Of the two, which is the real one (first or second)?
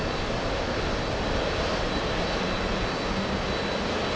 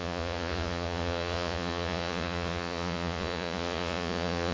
first